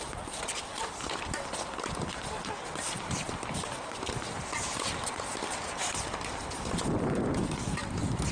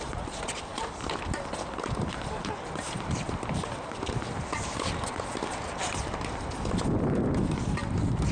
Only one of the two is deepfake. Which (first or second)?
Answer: first